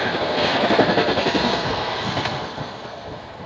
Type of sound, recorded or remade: remade